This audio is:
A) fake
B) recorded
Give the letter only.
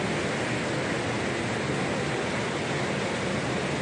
B